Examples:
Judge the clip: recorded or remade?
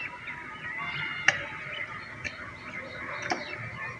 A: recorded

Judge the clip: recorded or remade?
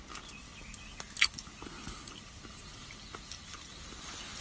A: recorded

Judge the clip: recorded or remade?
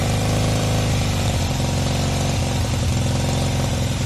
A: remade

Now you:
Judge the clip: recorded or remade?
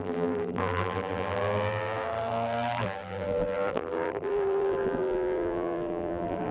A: remade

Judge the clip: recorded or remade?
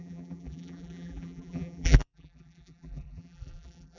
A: remade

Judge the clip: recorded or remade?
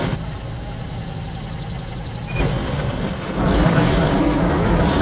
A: recorded